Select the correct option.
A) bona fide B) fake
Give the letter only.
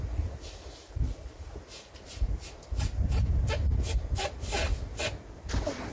A